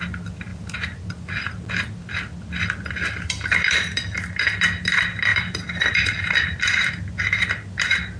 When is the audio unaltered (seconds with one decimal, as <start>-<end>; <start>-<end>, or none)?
0.0-8.2